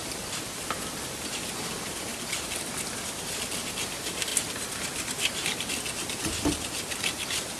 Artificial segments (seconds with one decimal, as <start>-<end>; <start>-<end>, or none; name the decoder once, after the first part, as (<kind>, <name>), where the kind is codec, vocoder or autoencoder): none